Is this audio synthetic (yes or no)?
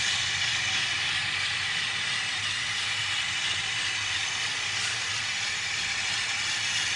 no